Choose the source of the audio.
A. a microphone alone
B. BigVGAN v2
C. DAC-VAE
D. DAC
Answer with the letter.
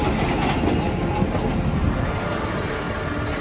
A